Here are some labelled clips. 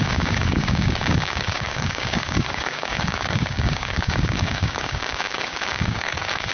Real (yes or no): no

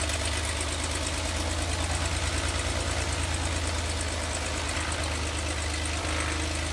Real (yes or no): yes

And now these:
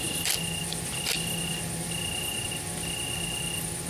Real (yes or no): yes